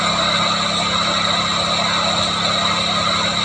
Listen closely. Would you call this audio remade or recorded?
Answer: recorded